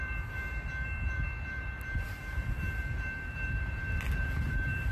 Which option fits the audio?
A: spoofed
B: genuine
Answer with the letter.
A